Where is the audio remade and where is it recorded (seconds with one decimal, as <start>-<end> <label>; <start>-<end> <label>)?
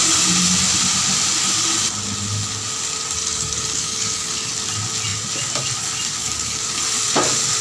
0.0-3.3 recorded; 3.3-4.5 remade; 4.5-6.2 recorded; 6.2-6.8 remade; 6.8-7.6 recorded